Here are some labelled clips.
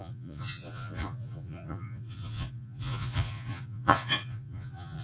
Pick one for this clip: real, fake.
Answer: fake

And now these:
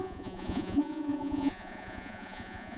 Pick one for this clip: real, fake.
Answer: fake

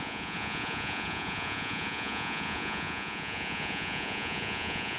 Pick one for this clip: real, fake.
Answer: fake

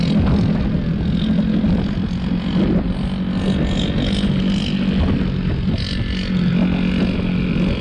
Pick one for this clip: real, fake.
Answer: real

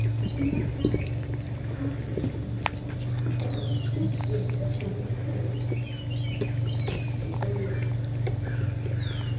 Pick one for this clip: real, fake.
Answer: real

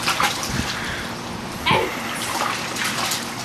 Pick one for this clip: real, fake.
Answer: real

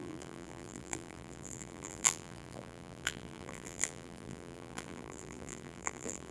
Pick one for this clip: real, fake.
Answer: fake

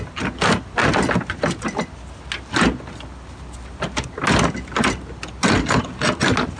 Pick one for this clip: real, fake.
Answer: real